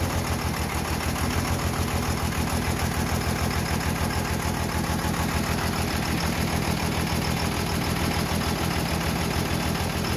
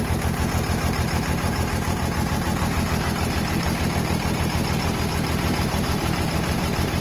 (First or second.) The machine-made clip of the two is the second